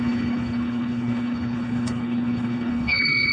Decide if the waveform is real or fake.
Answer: fake